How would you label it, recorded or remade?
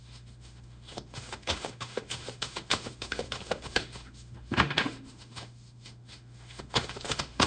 remade